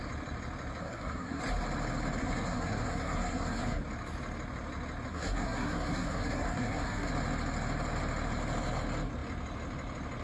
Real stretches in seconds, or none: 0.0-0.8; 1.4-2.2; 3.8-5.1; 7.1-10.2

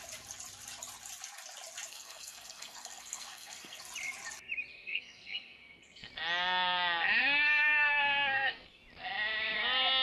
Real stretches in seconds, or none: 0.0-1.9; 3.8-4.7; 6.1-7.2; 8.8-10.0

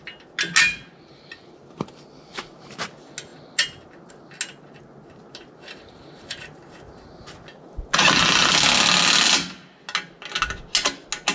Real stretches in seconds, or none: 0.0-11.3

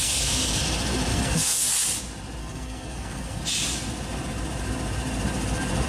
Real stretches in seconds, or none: 0.6-1.1; 1.7-2.4; 3.4-5.9